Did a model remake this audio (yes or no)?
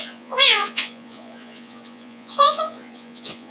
yes